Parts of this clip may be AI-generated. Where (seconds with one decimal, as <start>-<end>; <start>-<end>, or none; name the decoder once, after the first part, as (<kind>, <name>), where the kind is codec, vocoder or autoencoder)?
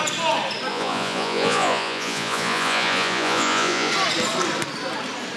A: 0.7-3.9 (vocoder, Vocos)